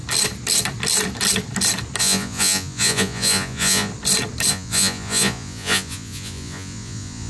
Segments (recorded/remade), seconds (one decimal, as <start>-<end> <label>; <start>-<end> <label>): 0.0-2.0 recorded; 2.0-3.9 remade; 3.9-4.5 recorded; 4.5-7.3 remade

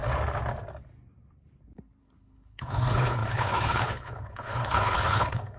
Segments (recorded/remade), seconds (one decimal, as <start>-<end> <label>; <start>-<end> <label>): 0.0-2.0 recorded; 2.0-5.6 remade

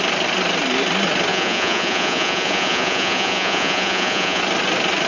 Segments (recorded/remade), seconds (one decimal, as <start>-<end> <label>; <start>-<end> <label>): 0.0-1.3 recorded; 1.3-4.4 remade; 4.4-5.1 recorded

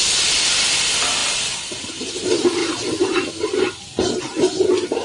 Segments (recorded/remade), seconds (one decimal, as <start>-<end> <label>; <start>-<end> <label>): 0.0-5.0 recorded

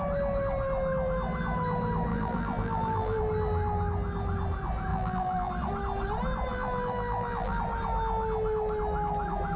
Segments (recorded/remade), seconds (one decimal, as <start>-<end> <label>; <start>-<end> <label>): 0.0-2.1 recorded; 2.1-3.2 remade; 3.2-4.9 recorded; 4.9-5.5 remade; 5.5-6.5 recorded; 6.5-7.6 remade; 7.6-9.6 recorded

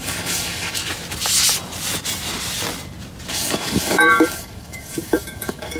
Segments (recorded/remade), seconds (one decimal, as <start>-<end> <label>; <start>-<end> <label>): 0.0-0.8 remade; 0.8-3.3 recorded; 3.3-5.8 remade